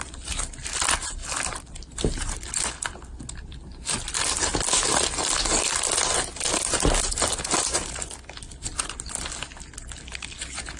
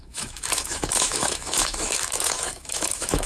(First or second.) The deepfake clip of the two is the second